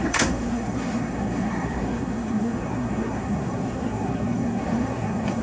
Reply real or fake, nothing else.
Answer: fake